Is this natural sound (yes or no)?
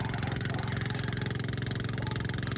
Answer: yes